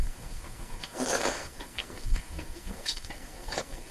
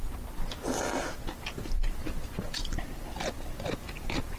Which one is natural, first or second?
second